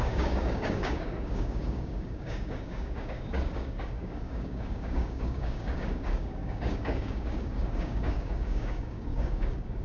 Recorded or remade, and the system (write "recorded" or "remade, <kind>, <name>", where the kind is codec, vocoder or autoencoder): remade, codec, DAC